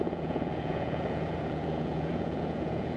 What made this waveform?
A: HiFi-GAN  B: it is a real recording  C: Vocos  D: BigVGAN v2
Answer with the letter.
C